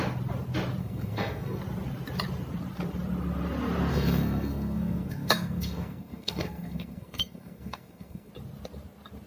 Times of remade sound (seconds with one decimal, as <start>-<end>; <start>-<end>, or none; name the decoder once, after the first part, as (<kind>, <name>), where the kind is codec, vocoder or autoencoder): 0.8-1.6 (codec, SNAC); 3.9-8.3